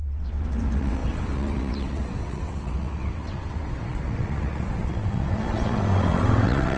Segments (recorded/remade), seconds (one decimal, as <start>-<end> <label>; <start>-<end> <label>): 0.0-6.8 remade